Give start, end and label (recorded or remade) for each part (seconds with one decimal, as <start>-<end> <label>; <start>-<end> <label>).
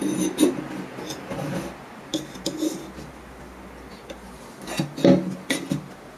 0.0-6.2 recorded